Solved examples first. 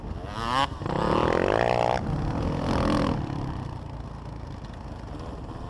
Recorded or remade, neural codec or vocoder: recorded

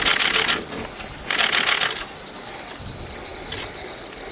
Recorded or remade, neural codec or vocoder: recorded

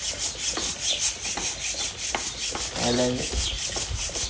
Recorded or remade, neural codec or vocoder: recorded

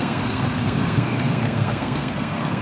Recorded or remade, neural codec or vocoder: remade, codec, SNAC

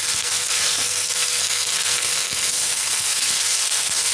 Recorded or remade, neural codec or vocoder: remade, codec, SNAC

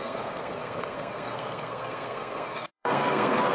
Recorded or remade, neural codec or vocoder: remade, codec, SNAC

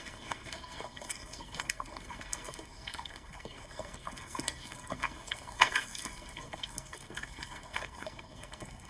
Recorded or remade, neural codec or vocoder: remade, codec, SNAC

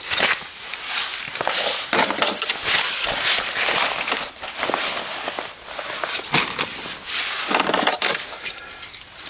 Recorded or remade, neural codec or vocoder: recorded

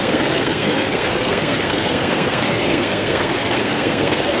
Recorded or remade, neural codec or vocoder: remade, codec, SNAC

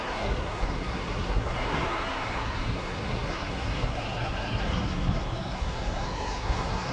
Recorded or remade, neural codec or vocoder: remade, codec, SNAC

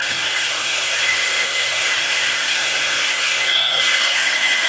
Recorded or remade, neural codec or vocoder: remade, codec, SNAC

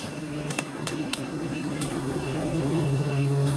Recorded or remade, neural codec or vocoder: remade, codec, SNAC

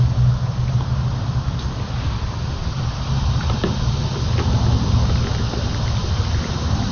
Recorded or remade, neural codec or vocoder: recorded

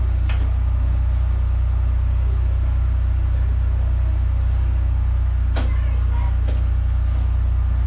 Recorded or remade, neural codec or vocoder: recorded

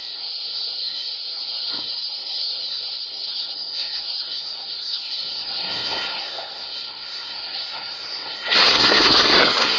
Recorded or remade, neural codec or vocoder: remade, codec, SNAC